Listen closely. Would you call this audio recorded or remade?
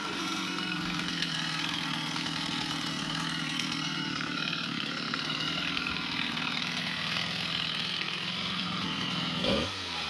remade